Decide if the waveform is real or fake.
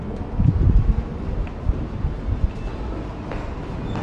real